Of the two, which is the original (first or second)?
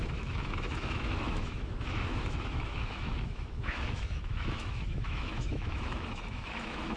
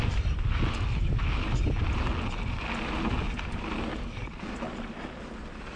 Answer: second